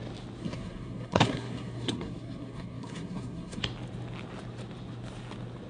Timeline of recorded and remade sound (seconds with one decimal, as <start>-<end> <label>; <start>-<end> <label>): 0.0-0.4 recorded; 0.4-3.6 remade; 3.6-5.7 recorded